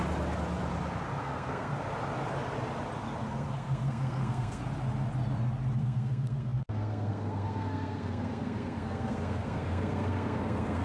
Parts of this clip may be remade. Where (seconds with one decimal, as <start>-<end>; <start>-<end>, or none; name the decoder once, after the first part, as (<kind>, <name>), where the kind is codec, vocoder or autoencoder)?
1.2-1.7 (codec, SNAC); 3.3-4.6; 5.8-10.8